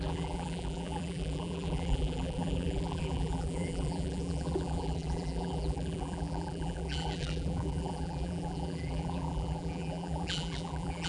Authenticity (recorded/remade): remade